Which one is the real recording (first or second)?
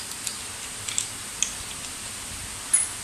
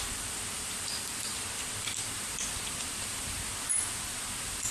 first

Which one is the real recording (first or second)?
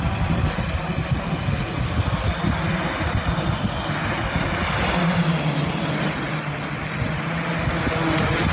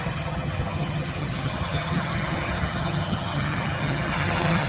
first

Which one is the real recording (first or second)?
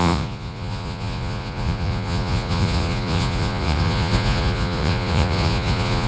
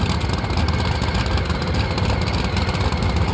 second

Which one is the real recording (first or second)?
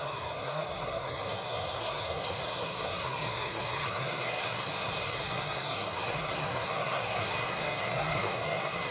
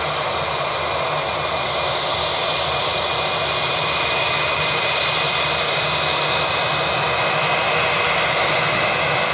second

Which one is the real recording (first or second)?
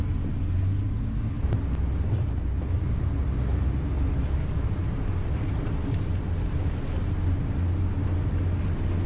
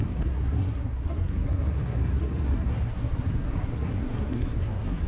first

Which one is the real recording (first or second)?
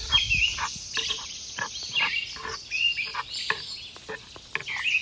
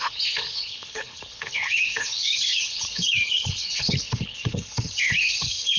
first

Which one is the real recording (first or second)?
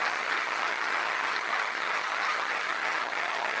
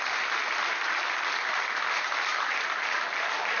second